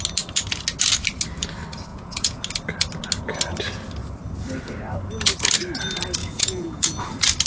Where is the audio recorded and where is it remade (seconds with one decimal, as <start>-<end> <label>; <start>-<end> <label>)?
0.0-1.9 recorded; 1.9-2.4 remade; 2.4-6.2 recorded; 6.2-7.0 remade; 7.0-7.5 recorded